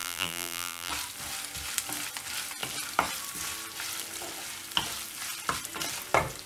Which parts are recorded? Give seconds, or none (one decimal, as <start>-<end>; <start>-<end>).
0.9-6.5